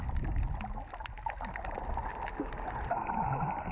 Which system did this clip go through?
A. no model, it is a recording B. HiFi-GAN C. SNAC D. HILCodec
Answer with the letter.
A